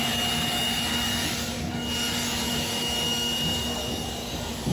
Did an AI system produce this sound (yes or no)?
yes